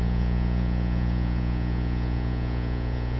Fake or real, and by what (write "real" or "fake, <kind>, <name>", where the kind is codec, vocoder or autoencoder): fake, vocoder, Vocos